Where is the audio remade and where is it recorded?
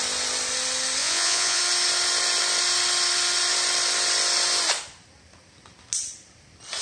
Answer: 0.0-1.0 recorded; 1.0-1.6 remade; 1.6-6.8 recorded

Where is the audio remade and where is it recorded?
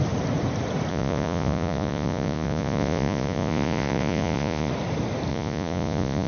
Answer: 0.0-0.9 recorded; 0.9-4.7 remade; 4.7-5.3 recorded; 5.3-6.3 remade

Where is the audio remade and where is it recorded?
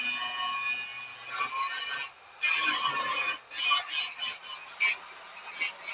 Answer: 0.0-5.9 recorded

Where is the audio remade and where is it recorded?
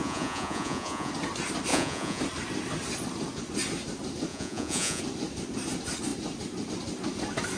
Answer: 0.0-1.1 remade; 1.1-1.7 recorded; 1.7-2.2 remade; 2.2-4.3 recorded; 4.3-5.0 remade; 5.0-7.6 recorded